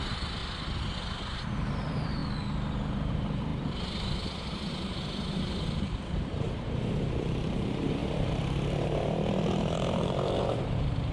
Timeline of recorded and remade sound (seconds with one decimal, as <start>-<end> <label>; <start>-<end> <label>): 0.0-0.4 remade; 0.4-1.0 recorded; 1.0-2.2 remade; 2.2-3.1 recorded; 3.1-11.1 remade